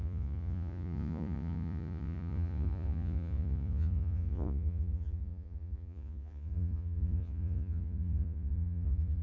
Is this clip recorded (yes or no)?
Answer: no